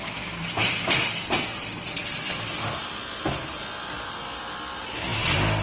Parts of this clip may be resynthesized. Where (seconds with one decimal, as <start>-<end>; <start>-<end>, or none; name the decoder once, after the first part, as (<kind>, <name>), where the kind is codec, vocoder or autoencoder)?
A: none